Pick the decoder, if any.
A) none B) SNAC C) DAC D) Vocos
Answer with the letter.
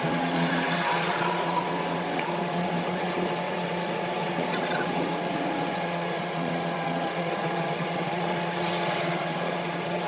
D